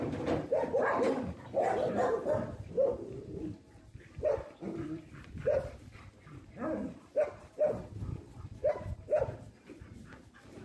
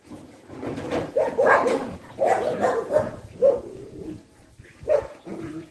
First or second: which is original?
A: first